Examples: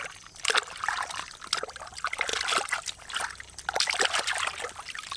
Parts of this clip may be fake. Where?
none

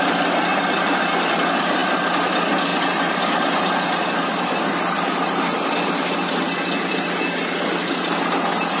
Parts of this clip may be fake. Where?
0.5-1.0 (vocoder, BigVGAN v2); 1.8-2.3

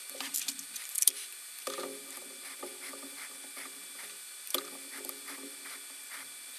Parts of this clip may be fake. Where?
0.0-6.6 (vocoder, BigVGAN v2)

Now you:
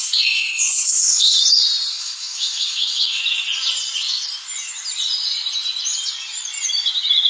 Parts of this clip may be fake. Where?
0.0-1.4 (codec, SNAC); 1.9-3.2